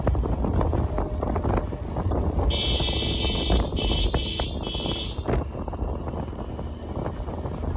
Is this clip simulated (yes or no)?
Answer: no